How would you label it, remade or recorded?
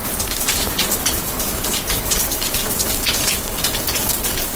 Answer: remade